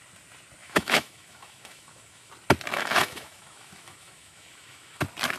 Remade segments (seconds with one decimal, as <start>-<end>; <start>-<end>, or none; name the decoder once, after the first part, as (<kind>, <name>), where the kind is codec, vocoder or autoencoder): 0.6-2.3 (autoencoder, DAC-VAE); 2.7-5.0